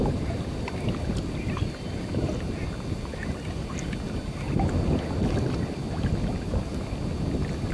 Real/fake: real